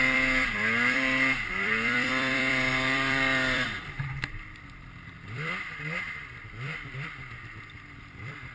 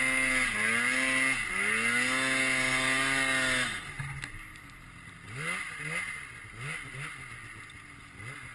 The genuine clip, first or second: second